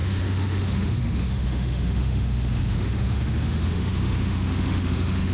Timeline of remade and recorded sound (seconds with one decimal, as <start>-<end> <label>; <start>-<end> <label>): 0.0-5.3 remade